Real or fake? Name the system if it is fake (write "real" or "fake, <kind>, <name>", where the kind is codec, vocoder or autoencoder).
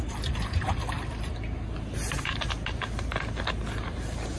real